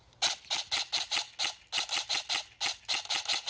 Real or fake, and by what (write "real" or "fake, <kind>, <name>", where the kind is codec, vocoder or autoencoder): real